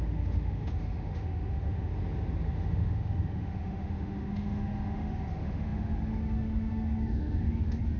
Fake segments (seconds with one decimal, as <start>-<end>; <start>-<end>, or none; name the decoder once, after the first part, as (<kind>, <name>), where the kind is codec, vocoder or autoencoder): 0.0-1.9 (autoencoder, DAC-VAE); 2.5-8.0

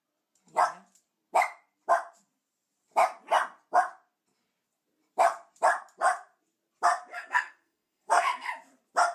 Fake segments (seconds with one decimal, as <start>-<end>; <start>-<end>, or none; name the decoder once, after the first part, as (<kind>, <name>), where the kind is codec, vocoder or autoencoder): 7.1-8.5 (codec, SNAC)